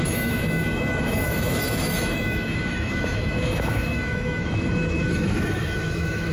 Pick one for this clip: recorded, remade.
remade